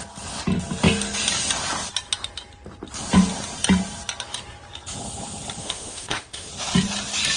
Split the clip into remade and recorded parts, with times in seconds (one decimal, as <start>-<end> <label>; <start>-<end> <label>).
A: 0.0-5.6 recorded; 5.6-6.5 remade; 6.5-7.4 recorded